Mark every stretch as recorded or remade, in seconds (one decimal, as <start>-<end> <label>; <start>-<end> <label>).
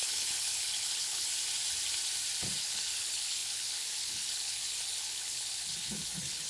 0.0-1.3 remade; 1.3-2.6 recorded; 2.6-6.5 remade